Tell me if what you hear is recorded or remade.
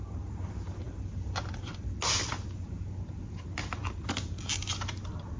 recorded